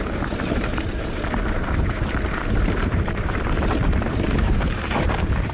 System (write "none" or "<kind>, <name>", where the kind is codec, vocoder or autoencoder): vocoder, BigVGAN v2